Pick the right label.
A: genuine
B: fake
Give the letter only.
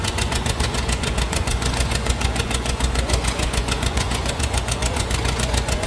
B